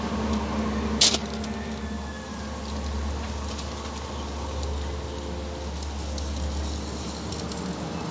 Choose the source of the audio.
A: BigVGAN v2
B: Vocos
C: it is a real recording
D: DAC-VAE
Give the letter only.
C